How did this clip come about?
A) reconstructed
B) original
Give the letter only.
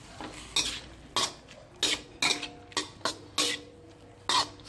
B